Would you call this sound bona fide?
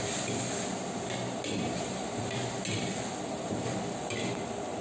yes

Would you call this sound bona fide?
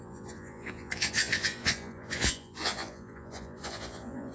no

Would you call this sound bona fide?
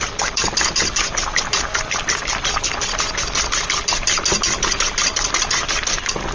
yes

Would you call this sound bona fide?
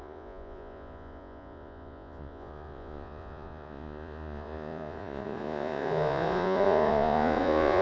no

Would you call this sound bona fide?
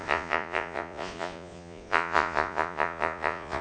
no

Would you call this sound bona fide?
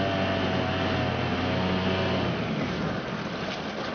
yes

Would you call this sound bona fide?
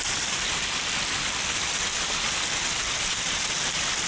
yes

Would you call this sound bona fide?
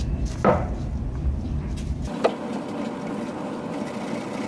yes